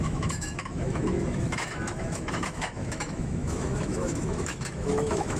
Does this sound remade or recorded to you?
remade